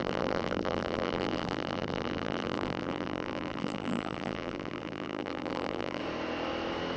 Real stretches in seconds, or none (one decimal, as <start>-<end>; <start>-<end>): 6.0-7.0